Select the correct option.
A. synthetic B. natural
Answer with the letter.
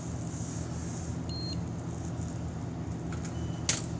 B